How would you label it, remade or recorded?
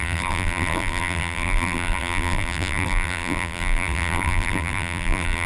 remade